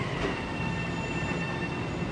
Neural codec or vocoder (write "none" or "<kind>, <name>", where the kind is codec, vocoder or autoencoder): none